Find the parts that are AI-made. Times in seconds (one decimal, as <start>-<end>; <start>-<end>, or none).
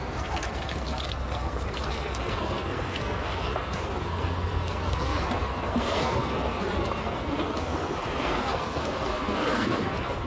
0.0-10.3